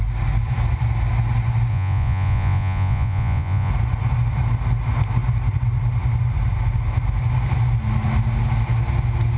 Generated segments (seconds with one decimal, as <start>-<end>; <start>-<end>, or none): 1.7-3.7